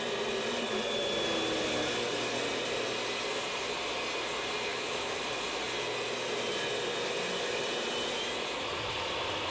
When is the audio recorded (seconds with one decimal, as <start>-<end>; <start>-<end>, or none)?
0.0-4.7; 5.2-9.5